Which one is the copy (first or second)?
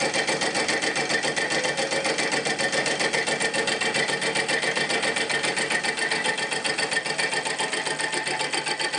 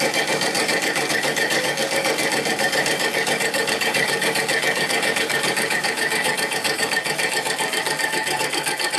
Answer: second